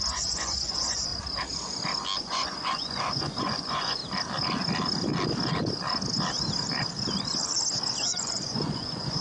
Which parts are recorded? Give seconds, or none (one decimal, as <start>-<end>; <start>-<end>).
1.1-2.2; 4.0-8.0